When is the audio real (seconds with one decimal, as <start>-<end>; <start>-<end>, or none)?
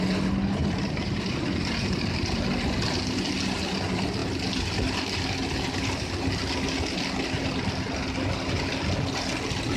0.0-0.6; 2.4-9.8